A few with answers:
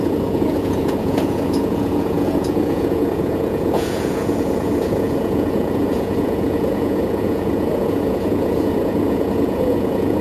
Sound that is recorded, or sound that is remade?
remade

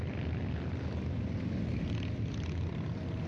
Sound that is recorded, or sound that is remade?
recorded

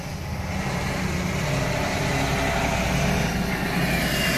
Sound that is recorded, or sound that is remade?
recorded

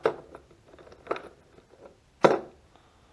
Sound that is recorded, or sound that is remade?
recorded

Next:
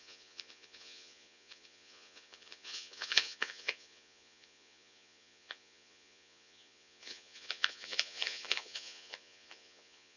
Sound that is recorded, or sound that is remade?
remade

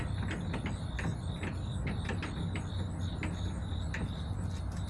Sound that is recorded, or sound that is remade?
recorded